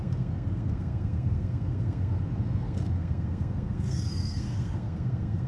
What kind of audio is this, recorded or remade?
remade